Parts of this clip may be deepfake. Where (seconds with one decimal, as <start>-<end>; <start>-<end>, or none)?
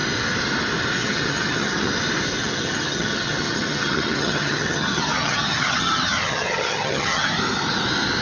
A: 1.0-1.9; 2.4-7.3